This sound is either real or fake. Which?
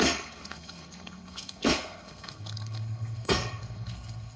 fake